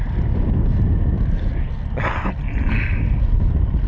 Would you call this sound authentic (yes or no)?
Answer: yes